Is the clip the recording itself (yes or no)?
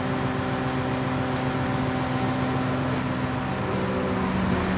yes